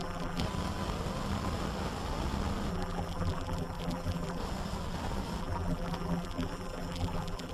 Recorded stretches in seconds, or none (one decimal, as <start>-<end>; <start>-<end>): 0.4-2.7; 4.4-5.4